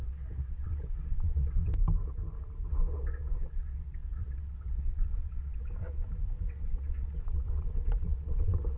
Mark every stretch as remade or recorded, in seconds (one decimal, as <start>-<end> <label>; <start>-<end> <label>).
0.0-1.7 remade; 1.7-2.7 recorded; 2.7-6.0 remade; 6.0-6.5 recorded; 6.5-8.8 remade